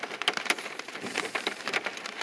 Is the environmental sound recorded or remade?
remade